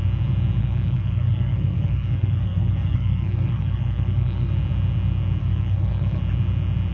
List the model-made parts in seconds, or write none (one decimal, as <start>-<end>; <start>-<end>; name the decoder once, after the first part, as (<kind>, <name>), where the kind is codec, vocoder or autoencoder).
0.6-4.5 (codec, SNAC); 5.4-6.2